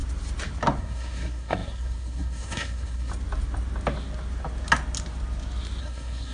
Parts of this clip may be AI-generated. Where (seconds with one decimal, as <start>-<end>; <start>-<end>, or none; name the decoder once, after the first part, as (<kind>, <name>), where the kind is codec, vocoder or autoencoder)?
0.8-3.1 (codec, SNAC); 5.8-6.3